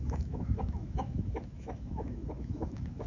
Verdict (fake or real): fake